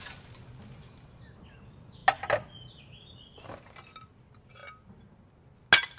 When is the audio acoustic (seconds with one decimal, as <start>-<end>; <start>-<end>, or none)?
0.0-6.0